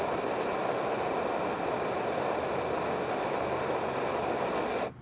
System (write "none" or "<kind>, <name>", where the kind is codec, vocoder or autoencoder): none